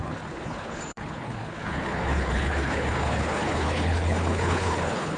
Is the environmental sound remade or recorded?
remade